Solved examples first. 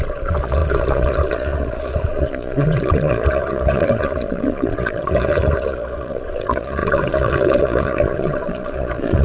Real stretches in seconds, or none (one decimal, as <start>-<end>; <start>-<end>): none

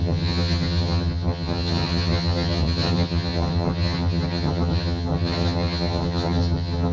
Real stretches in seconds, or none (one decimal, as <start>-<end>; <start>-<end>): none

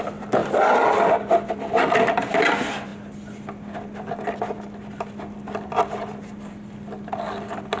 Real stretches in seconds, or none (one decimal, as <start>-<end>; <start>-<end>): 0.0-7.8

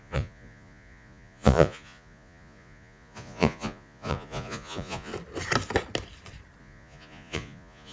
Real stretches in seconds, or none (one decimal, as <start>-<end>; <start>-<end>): 5.1-6.6